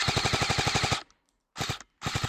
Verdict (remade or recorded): recorded